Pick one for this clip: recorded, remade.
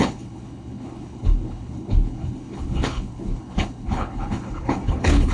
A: remade